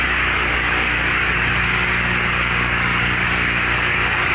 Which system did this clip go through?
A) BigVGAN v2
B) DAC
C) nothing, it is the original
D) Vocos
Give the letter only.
B